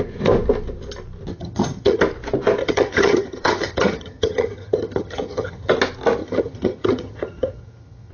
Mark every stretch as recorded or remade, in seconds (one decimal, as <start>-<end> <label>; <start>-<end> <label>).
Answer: 0.0-1.3 recorded; 1.3-2.0 remade; 2.0-2.6 recorded; 2.6-5.7 remade; 5.7-6.2 recorded; 6.2-8.1 remade